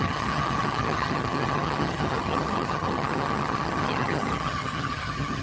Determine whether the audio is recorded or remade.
remade